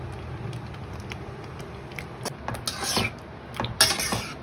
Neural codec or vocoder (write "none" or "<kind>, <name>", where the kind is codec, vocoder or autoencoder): none